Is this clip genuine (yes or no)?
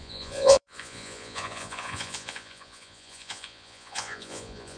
no